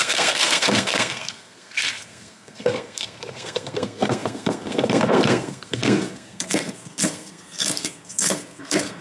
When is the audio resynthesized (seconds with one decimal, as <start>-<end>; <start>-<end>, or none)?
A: 0.0-9.0